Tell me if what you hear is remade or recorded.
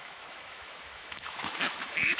remade